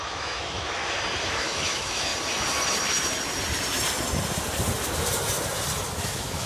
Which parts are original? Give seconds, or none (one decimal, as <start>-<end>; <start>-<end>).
0.8-1.4; 2.1-6.0